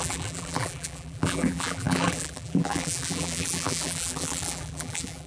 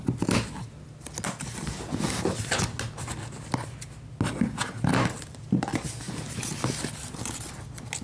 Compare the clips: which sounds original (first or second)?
second